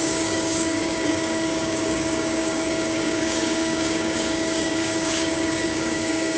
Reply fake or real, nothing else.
fake